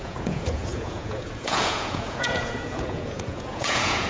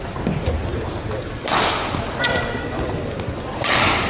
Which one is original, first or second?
second